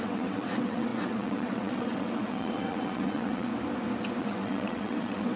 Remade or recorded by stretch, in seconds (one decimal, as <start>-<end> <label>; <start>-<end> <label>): 0.0-3.5 remade; 3.5-4.2 recorded; 4.2-5.4 remade